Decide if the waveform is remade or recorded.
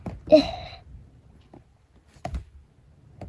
recorded